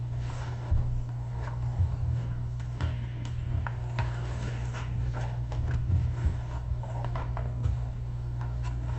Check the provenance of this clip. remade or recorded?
remade